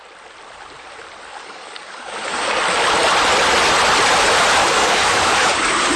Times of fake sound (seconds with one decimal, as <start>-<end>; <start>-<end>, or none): 1.3-2.5; 4.6-6.0